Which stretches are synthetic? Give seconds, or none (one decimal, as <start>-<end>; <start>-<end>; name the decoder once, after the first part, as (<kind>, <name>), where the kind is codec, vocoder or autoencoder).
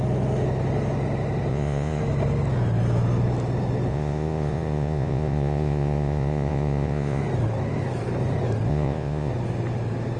1.5-2.0 (vocoder, Vocos); 3.9-7.2; 8.7-9.3